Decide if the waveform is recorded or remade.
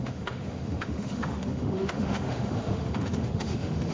remade